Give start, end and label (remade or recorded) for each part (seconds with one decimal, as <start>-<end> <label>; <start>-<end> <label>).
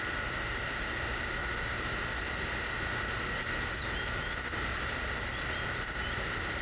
0.0-1.4 remade; 1.4-4.8 recorded; 4.8-6.6 remade